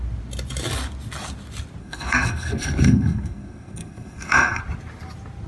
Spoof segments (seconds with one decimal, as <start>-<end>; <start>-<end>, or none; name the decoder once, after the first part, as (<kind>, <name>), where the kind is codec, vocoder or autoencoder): 1.8-4.6 (codec, SNAC)